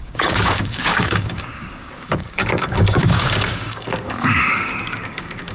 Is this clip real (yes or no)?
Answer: no